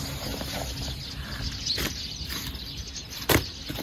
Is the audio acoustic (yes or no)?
yes